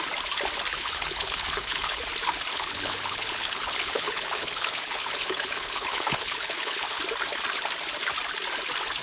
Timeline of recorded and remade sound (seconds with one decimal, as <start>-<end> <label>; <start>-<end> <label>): 0.0-0.7 recorded; 0.7-2.0 remade; 2.0-2.5 recorded; 2.5-7.0 remade; 7.0-9.0 recorded